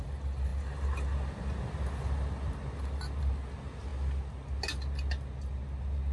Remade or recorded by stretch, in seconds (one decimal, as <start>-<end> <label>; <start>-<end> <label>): 0.0-6.1 recorded